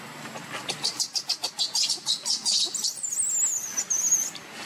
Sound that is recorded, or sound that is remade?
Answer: recorded